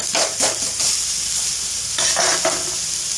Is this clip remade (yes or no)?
no